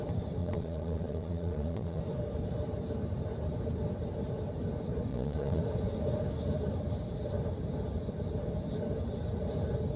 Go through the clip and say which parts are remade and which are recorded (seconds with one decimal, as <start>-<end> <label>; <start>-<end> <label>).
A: 0.0-0.4 recorded; 0.4-2.0 remade; 2.0-5.1 recorded; 5.1-5.6 remade; 5.6-10.0 recorded